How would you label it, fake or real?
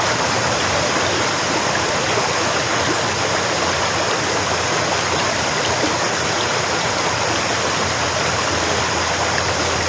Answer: real